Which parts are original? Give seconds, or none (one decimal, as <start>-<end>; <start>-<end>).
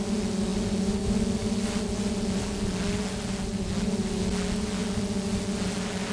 0.0-6.1